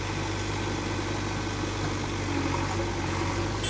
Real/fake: real